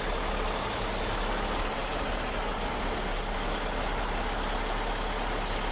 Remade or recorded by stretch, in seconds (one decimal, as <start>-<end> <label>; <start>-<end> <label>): 0.0-5.7 recorded

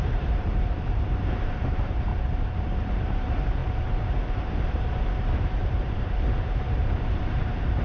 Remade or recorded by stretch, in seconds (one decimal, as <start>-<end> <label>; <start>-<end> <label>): 0.0-2.1 remade; 2.1-2.8 recorded; 2.8-7.8 remade

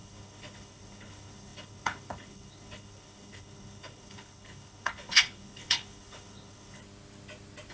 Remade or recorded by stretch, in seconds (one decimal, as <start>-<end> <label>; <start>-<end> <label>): 0.0-6.8 remade; 6.8-7.7 recorded

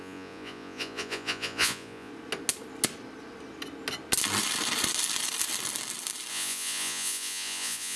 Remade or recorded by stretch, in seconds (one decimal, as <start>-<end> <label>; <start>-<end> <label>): 0.0-2.1 remade; 2.1-6.3 recorded; 6.3-8.0 remade

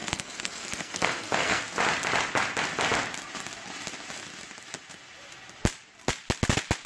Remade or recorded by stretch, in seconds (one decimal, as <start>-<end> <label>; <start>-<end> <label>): 0.0-1.6 remade; 1.6-6.9 recorded